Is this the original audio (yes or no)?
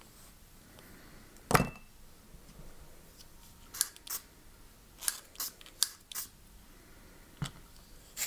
yes